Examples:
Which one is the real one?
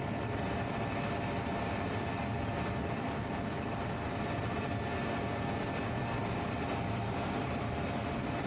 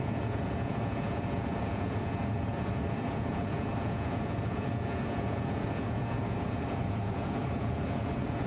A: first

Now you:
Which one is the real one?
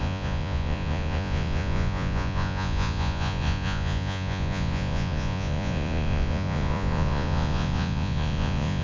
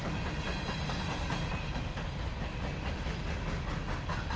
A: second